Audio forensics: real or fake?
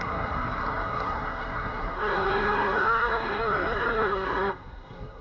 fake